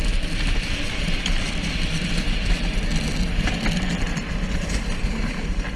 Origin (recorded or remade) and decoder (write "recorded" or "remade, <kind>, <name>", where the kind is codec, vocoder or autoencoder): recorded